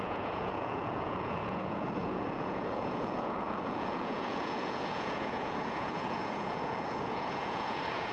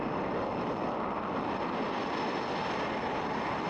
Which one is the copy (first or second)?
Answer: first